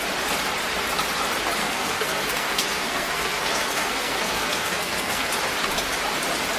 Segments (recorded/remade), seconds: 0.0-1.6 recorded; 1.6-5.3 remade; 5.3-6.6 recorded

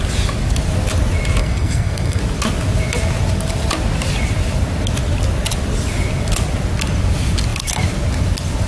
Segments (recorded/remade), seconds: 0.0-1.4 recorded; 1.4-2.2 remade; 2.2-8.7 recorded